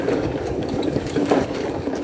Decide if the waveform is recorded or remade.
remade